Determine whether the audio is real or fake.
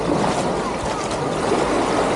real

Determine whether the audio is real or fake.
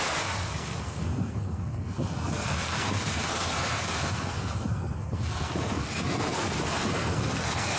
fake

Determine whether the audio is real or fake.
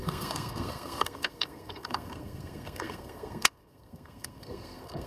fake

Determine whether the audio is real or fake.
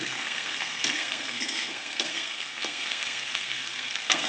fake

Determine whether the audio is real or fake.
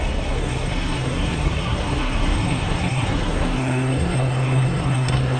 fake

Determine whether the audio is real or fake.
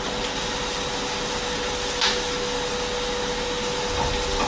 real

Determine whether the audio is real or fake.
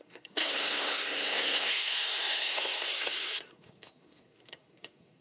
fake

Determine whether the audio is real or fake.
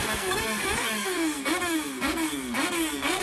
fake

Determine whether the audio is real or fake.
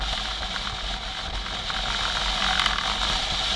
real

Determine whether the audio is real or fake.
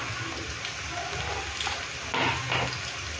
real